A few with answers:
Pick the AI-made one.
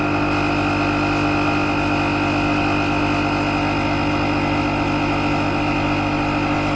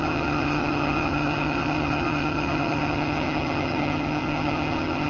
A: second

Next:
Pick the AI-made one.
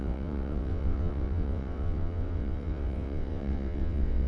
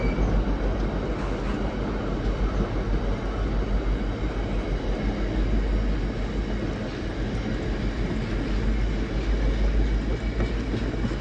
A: first